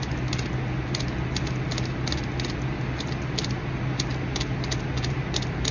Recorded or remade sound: recorded